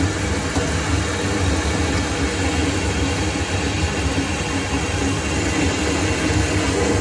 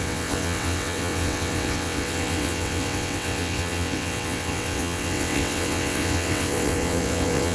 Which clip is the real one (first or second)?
first